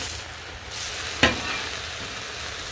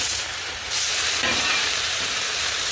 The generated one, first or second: second